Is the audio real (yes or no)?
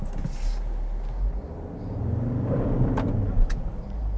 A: yes